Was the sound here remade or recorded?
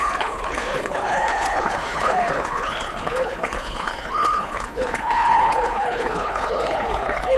remade